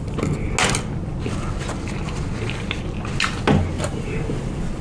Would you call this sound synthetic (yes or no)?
no